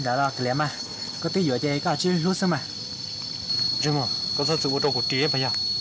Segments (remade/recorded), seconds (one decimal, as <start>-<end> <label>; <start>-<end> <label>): 0.0-0.7 recorded; 0.7-1.2 remade; 1.2-5.8 recorded